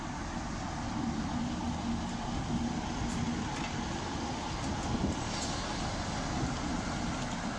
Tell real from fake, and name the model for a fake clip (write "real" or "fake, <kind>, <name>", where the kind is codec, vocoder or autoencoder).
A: real